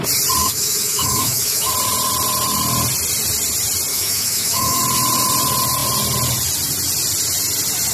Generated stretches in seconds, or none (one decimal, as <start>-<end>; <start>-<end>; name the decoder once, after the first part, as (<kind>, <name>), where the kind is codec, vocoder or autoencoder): 0.4-1.7 (autoencoder, DAC-VAE); 3.9-4.8